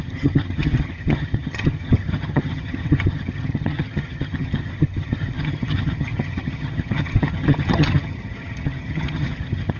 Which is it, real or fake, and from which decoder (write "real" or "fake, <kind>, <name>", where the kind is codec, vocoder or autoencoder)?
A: fake, vocoder, HiFi-GAN